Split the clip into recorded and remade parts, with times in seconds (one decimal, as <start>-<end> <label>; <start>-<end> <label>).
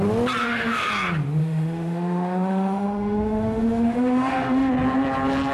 0.0-0.4 recorded; 0.4-0.9 remade; 0.9-1.4 recorded; 1.4-4.7 remade; 4.7-5.5 recorded